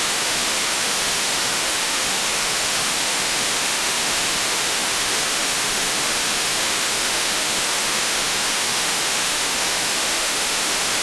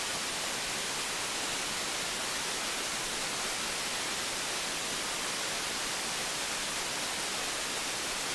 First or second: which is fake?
first